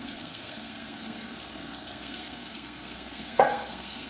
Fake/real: fake